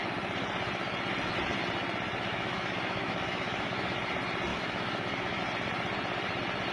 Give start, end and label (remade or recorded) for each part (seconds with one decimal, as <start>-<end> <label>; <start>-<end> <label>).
0.0-2.3 recorded; 2.3-4.1 remade; 4.1-4.5 recorded; 4.5-5.4 remade; 5.4-6.7 recorded

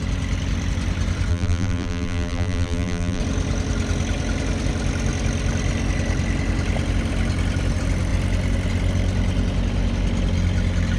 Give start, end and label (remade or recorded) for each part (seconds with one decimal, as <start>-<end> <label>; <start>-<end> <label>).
0.0-1.3 recorded; 1.3-3.2 remade; 3.2-11.0 recorded

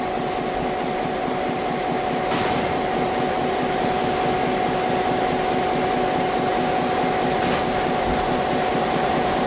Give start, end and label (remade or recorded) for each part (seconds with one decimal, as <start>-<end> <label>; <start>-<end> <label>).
0.0-1.2 recorded; 1.2-3.9 remade; 3.9-8.7 recorded; 8.7-9.5 remade

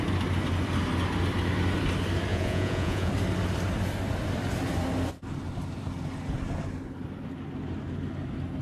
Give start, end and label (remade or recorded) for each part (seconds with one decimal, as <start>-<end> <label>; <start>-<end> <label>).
0.0-2.3 recorded; 2.3-3.1 remade; 3.1-8.6 recorded